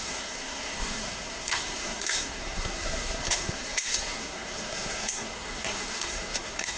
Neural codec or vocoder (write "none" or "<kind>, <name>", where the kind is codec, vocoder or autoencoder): codec, SNAC